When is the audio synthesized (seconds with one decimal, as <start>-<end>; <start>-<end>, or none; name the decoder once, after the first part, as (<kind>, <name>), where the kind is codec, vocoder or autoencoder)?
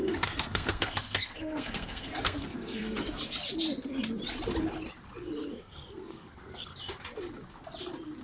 0.0-3.0 (codec, SNAC); 5.5-6.7